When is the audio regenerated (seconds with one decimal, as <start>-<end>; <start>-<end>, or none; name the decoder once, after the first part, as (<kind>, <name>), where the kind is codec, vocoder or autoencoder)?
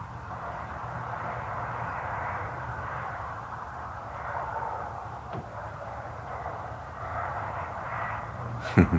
0.0-9.0 (vocoder, BigVGAN v2)